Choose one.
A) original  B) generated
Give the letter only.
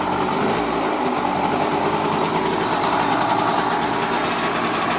A